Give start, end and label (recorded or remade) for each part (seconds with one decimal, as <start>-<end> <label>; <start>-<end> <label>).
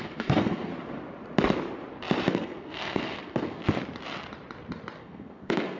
0.0-0.7 remade; 0.7-2.3 recorded; 2.3-3.6 remade; 3.6-5.0 recorded; 5.0-5.8 remade